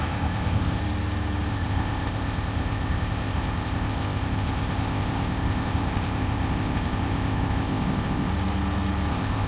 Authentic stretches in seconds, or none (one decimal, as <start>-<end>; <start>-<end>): 0.8-1.5; 8.3-9.1